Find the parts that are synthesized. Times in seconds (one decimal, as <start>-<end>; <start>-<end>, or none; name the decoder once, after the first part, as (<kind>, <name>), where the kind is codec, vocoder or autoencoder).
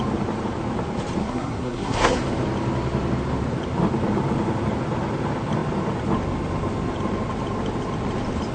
1.2-2.2 (codec, SNAC)